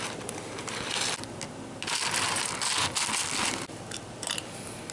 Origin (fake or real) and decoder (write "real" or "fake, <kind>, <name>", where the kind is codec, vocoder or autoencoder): real